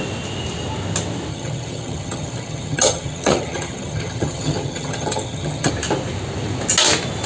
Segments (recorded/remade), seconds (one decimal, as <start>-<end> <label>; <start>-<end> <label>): 0.0-1.3 recorded; 1.3-5.7 remade; 5.7-7.3 recorded